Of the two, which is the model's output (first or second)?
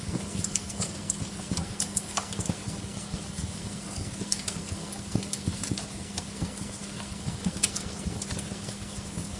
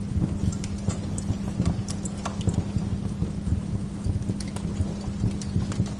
first